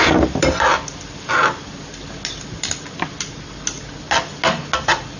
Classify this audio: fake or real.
real